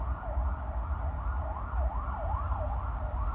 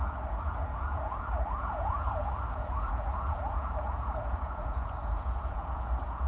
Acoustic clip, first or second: first